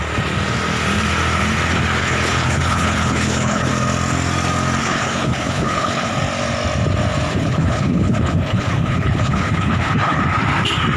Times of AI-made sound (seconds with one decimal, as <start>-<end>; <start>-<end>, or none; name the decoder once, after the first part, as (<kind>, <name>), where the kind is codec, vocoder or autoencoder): 2.0-3.7 (codec, HILCodec); 4.8-6.1; 7.3-10.2